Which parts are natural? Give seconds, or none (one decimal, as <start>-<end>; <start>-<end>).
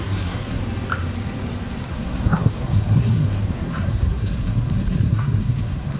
0.6-1.9